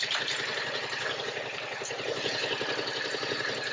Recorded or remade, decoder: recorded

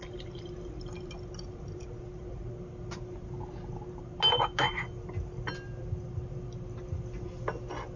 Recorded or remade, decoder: recorded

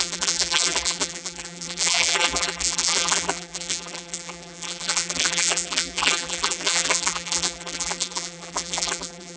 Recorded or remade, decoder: remade, vocoder, BigVGAN v2